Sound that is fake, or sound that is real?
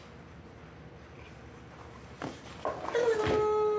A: real